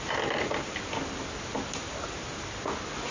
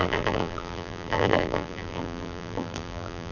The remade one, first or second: second